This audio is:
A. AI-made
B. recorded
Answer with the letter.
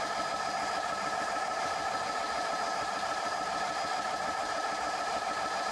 B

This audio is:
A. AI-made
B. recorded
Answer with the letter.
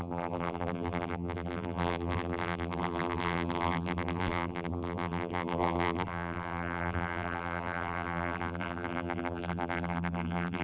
A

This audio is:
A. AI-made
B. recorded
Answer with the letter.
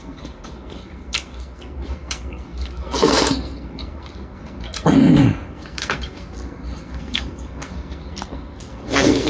A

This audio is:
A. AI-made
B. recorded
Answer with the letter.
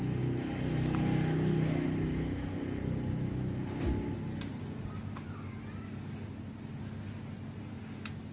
B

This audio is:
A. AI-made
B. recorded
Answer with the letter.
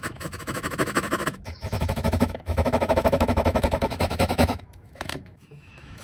A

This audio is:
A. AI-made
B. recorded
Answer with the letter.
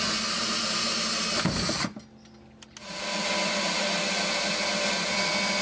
B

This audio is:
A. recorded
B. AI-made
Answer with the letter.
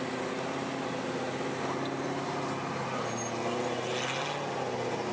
A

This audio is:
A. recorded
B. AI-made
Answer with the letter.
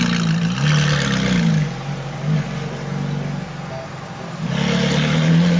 A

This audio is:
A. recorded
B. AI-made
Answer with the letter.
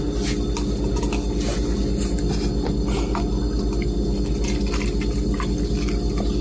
A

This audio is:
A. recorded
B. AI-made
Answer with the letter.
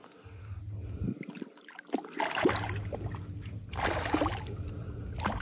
A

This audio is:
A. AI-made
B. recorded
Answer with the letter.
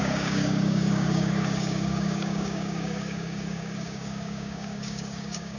A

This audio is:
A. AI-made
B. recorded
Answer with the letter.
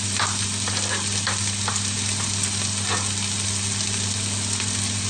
B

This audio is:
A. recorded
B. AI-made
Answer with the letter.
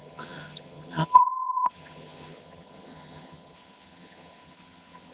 B